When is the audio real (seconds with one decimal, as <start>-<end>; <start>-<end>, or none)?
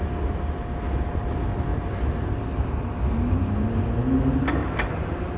0.0-1.7; 2.3-4.6